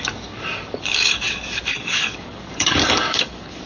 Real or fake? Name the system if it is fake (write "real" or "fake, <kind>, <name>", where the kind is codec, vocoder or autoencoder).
fake, codec, DAC